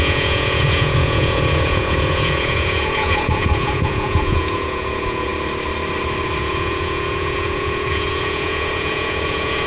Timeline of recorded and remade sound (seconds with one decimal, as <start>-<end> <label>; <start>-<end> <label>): 0.0-5.3 remade; 5.3-6.4 recorded; 6.4-9.7 remade